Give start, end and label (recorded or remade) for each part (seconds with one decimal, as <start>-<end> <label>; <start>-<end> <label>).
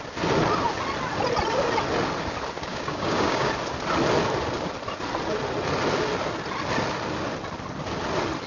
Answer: 0.0-2.7 recorded; 2.7-3.5 remade; 3.5-8.5 recorded